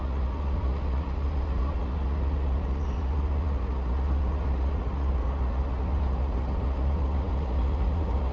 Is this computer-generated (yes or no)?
yes